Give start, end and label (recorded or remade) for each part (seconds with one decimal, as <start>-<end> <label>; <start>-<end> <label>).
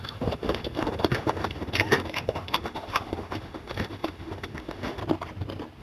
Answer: 0.0-5.0 remade; 5.0-5.8 recorded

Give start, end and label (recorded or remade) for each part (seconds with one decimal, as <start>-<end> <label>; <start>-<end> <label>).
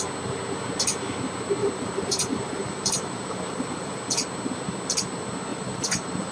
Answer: 0.0-1.6 recorded; 1.6-4.0 remade; 4.0-5.5 recorded; 5.5-6.3 remade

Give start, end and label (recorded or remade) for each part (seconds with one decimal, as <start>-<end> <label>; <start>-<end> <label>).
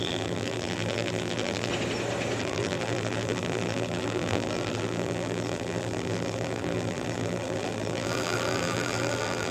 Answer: 0.0-1.7 remade; 1.7-2.4 recorded; 2.4-9.5 remade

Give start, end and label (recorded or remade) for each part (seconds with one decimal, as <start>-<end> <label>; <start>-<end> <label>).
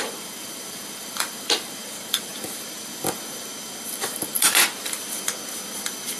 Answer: 0.0-6.2 remade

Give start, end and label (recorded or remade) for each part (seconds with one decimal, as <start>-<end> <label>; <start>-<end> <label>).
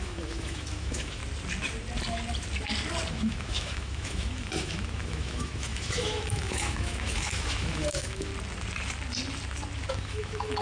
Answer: 0.0-1.2 remade; 1.2-3.1 recorded; 3.1-8.3 remade; 8.3-9.9 recorded; 9.9-10.6 remade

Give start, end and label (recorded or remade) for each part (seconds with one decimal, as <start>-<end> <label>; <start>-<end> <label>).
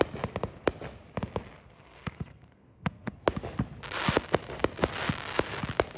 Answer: 0.0-1.6 recorded; 1.6-3.1 remade; 3.1-6.0 recorded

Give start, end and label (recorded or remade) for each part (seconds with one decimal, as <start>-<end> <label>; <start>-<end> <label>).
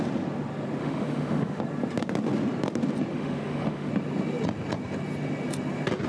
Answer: 0.0-0.8 recorded; 0.8-1.6 remade; 1.6-3.1 recorded; 3.1-3.9 remade; 3.9-6.1 recorded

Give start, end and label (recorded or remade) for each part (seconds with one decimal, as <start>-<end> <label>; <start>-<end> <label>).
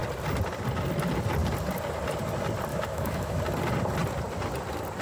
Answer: 0.0-2.7 recorded; 2.7-3.4 remade; 3.4-5.0 recorded